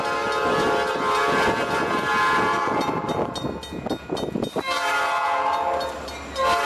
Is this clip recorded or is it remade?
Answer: recorded